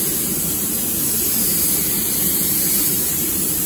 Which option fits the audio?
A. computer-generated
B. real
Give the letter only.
A